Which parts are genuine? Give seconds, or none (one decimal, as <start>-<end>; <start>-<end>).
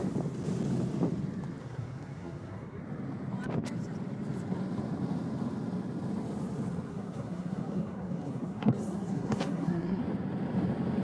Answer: 0.0-1.6; 2.8-6.9; 10.0-11.0